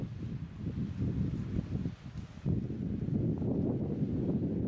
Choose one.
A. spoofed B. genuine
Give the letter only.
B